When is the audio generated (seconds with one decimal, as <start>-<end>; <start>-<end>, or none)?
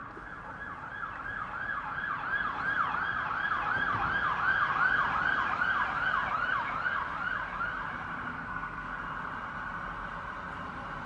8.3-8.9